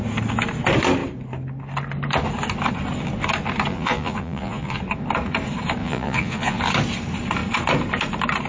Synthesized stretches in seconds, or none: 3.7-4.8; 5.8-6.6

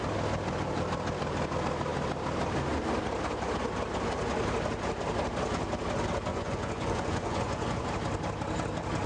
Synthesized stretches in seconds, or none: 6.3-7.9

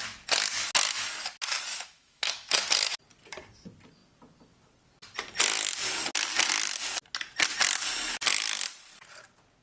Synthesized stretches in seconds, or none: 1.7-2.6

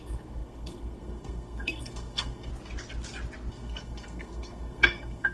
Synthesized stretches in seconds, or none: 0.0-2.5; 3.5-5.3

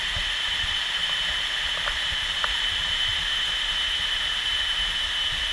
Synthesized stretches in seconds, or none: none

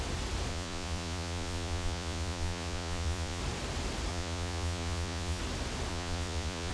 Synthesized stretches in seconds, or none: 0.5-3.4; 4.1-5.4; 5.9-6.7

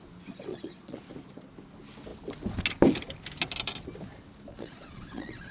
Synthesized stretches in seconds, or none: 0.5-1.0; 4.5-5.5